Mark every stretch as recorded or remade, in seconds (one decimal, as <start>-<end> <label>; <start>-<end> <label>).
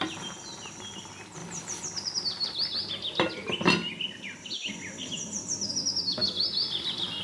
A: 0.0-7.2 recorded